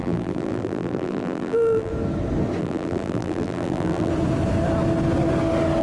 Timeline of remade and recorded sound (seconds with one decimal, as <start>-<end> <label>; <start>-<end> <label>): 0.0-1.9 remade; 1.9-2.6 recorded; 2.6-4.1 remade; 4.1-5.8 recorded